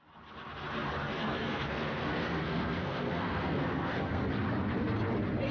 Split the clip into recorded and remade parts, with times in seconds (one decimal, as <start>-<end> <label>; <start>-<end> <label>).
0.0-1.2 recorded; 1.2-4.3 remade; 4.3-5.5 recorded